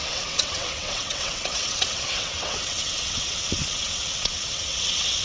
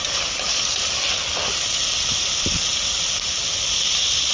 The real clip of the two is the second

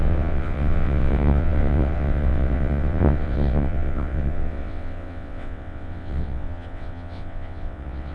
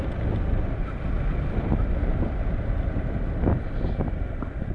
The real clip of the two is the second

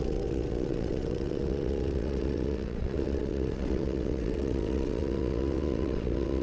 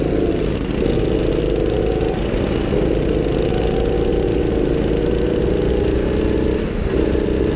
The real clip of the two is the second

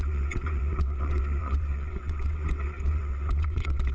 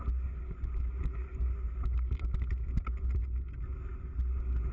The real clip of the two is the second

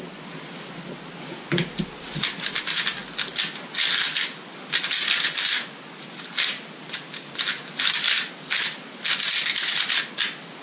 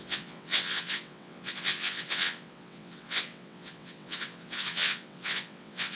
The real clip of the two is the first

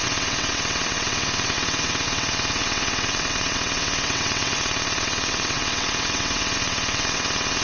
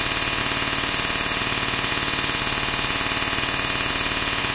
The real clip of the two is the second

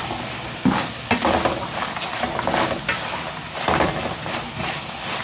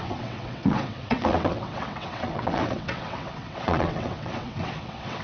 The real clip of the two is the first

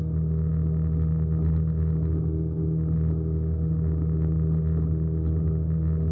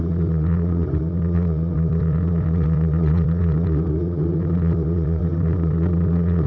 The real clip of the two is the first